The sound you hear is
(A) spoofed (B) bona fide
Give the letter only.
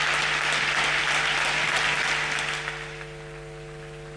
B